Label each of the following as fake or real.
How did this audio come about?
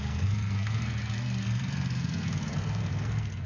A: fake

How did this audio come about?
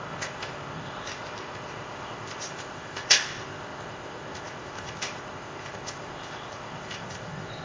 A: fake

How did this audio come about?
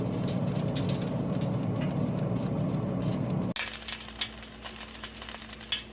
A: real